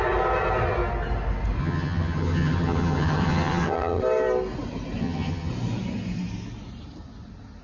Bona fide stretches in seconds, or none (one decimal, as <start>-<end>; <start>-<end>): 0.0-1.6; 4.0-5.0; 5.5-7.6